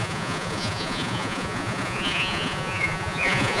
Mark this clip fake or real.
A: fake